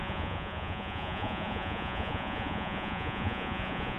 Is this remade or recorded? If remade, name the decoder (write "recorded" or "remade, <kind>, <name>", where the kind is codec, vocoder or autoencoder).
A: remade, vocoder, Vocos